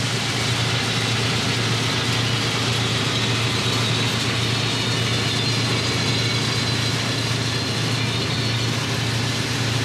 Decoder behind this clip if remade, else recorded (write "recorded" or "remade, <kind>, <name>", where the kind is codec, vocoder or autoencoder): recorded